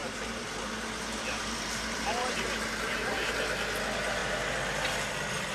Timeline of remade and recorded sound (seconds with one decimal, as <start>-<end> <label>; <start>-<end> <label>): 0.0-3.3 remade; 3.3-5.5 recorded